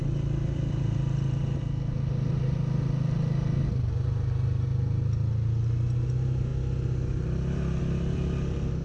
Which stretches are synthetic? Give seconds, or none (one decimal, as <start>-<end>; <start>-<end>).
none